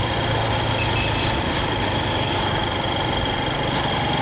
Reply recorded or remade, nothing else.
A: recorded